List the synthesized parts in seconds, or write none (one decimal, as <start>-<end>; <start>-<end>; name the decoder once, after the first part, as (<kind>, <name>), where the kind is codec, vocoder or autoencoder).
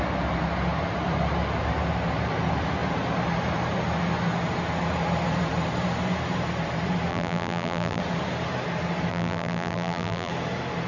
7.1-8.0 (vocoder, BigVGAN v2); 9.1-10.3